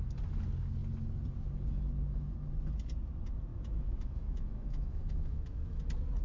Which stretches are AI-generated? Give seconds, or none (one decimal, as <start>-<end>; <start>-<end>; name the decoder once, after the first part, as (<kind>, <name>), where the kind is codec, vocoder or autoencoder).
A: 3.5-5.8 (autoencoder, DAC-VAE)